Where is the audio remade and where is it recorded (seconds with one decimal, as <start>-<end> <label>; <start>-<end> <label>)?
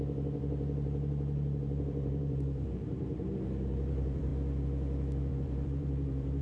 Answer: 0.0-4.3 remade; 4.3-5.3 recorded; 5.3-6.4 remade